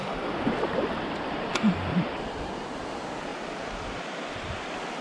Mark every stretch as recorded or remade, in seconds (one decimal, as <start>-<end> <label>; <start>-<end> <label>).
0.0-5.0 recorded